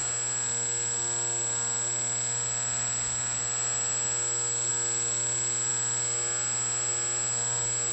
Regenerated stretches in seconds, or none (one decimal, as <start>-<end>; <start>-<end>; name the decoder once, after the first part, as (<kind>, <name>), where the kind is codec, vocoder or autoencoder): none